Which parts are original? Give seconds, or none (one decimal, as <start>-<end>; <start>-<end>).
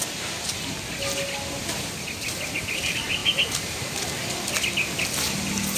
0.0-5.8